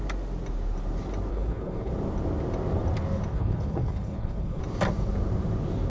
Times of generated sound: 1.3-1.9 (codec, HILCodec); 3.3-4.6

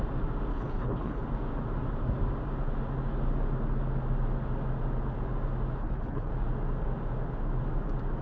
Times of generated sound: 0.5-1.2 (codec, HILCodec); 5.8-6.3